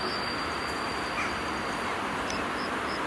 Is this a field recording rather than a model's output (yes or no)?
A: yes